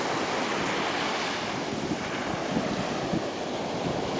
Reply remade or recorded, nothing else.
recorded